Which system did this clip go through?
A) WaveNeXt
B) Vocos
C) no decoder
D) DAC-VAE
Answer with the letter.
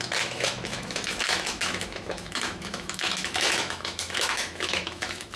D